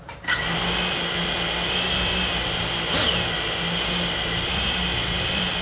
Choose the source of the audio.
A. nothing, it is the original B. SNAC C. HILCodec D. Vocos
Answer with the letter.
A